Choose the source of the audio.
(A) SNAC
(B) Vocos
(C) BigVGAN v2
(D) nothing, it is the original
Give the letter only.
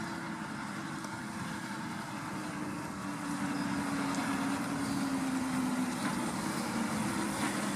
D